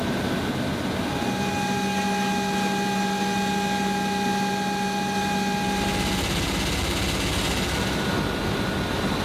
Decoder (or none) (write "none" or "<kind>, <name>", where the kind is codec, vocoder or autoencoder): none